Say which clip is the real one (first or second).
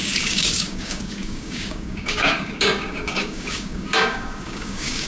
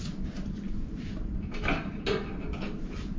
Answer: second